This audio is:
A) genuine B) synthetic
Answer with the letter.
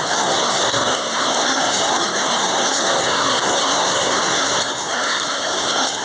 B